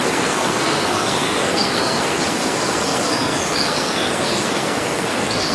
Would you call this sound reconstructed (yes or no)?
yes